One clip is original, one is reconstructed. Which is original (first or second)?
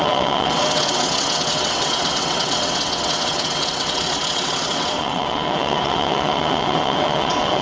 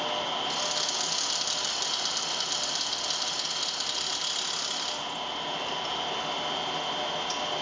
second